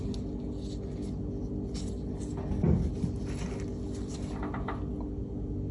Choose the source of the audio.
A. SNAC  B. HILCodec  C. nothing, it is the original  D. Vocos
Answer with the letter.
C